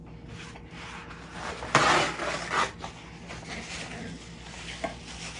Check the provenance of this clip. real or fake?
real